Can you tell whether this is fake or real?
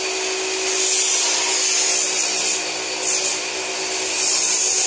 real